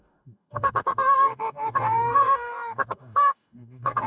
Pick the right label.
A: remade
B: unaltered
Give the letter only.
A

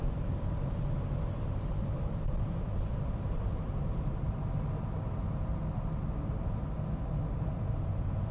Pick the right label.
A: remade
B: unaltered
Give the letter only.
B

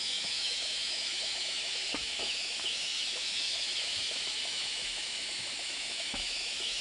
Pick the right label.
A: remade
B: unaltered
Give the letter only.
A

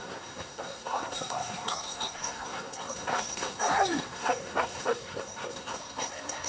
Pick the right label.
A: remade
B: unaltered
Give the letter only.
A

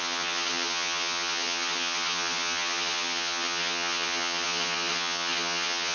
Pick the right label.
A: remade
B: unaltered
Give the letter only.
A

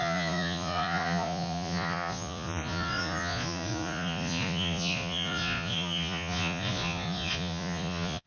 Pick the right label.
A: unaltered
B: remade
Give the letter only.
B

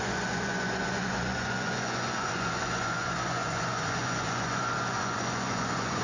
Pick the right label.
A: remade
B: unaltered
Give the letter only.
A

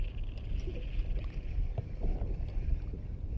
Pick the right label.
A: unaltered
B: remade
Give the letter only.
A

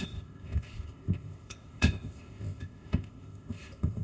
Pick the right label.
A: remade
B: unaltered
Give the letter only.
A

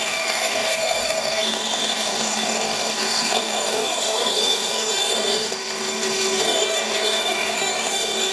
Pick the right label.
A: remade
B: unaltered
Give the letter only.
A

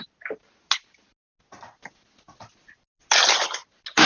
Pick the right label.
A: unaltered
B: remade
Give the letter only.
A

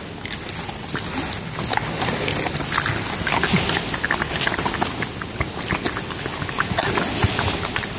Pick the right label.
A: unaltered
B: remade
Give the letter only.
A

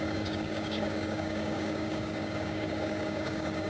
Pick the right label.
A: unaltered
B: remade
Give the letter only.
B